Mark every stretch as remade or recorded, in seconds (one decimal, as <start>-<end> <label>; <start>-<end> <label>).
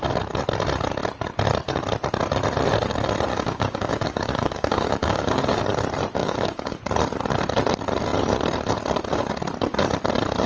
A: 0.0-3.3 recorded; 3.3-5.6 remade; 5.6-6.2 recorded; 6.2-6.8 remade; 6.8-10.5 recorded